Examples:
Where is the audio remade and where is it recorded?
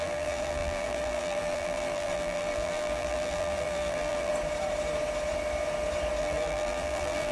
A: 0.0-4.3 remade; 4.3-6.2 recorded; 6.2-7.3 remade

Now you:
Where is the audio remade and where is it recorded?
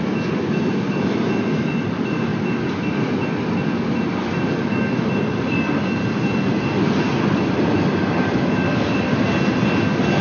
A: 0.0-10.2 recorded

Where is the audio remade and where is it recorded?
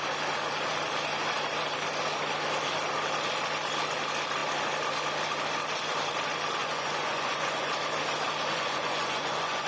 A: 0.0-6.6 recorded; 6.6-7.7 remade; 7.7-8.5 recorded; 8.5-9.7 remade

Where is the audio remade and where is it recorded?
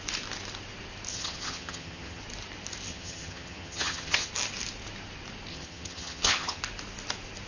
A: 0.0-1.1 recorded; 1.1-2.2 remade; 2.2-2.9 recorded; 2.9-4.3 remade; 4.3-5.5 recorded; 5.5-6.6 remade; 6.6-7.5 recorded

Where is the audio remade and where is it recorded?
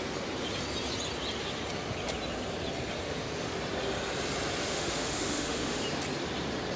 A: 0.0-4.6 recorded; 4.6-5.8 remade; 5.8-6.8 recorded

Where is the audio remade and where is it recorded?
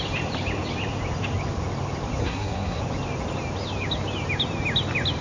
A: 0.0-2.2 recorded; 2.2-2.8 remade; 2.8-5.2 recorded